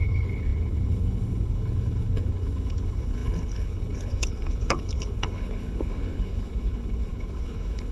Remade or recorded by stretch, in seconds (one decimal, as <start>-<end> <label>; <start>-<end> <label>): 0.0-7.9 remade